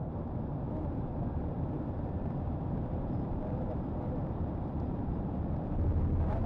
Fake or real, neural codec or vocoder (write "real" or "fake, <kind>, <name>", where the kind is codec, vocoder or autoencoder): fake, vocoder, BigVGAN v2